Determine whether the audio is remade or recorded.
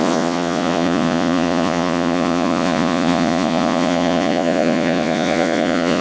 remade